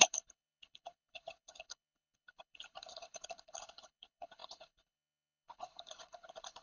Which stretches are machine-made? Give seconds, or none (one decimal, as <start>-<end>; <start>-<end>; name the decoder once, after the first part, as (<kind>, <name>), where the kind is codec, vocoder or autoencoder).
0.0-6.6 (codec, HILCodec)